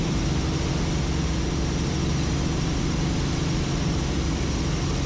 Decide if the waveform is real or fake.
real